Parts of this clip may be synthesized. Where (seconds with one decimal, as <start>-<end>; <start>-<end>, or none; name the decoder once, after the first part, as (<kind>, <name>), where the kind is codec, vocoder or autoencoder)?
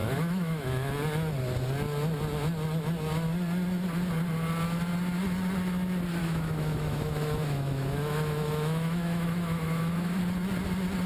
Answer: 0.0-0.9 (autoencoder, DAC-VAE); 6.2-10.2